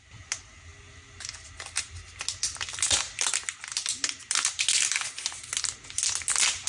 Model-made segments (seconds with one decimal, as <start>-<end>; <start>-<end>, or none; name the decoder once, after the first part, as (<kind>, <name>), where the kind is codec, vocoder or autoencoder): none